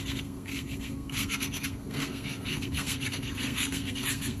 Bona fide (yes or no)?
no